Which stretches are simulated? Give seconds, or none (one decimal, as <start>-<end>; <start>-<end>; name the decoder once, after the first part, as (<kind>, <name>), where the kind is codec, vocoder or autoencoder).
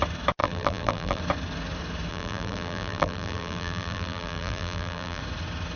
0.4-1.2 (vocoder, BigVGAN v2); 2.1-5.2